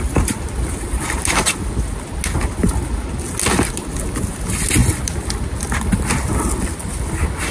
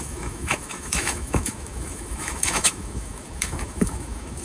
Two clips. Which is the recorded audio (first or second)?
first